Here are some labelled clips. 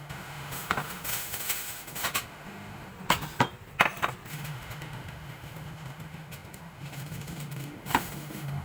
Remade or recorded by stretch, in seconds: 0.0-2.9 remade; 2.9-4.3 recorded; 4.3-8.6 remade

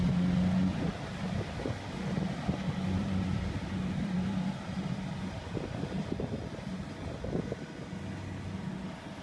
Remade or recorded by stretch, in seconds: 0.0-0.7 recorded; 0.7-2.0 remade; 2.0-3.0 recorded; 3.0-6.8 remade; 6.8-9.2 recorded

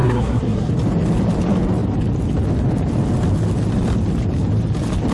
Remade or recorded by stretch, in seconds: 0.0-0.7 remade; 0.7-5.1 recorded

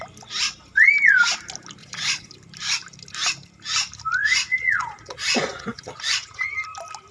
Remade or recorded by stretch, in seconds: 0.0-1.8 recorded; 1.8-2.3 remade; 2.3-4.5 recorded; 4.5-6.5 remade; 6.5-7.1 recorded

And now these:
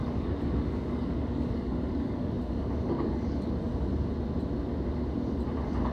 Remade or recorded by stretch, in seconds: 0.0-3.5 remade; 3.5-5.9 recorded

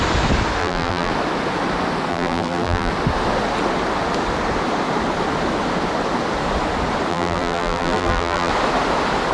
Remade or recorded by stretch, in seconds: 0.0-0.6 recorded; 0.6-1.1 remade; 1.1-2.1 recorded; 2.1-2.9 remade; 2.9-7.1 recorded; 7.1-8.5 remade; 8.5-9.3 recorded